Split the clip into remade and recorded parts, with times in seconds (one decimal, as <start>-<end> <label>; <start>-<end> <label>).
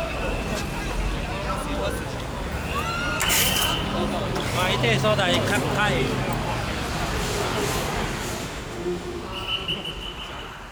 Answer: 0.0-8.4 recorded; 8.4-9.2 remade; 9.2-10.7 recorded